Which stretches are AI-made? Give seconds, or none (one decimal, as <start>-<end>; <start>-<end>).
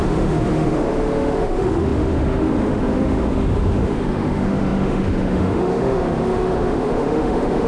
0.0-7.7